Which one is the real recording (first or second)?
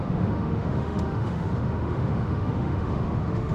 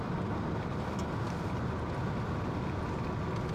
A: second